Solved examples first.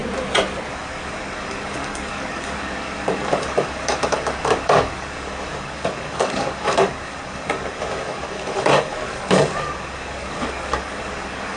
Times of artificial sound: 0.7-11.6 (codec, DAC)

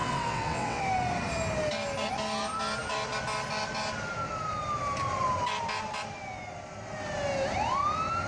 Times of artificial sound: 0.0-0.8 (vocoder, WaveNeXt)

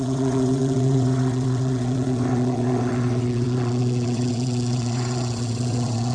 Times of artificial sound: 0.0-6.1 (vocoder, WaveNeXt)

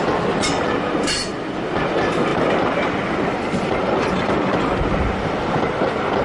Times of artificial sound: none